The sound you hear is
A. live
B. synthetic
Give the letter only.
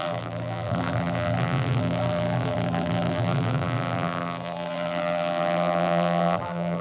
B